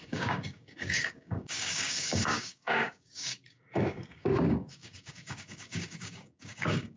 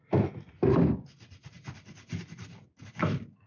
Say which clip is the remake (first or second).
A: first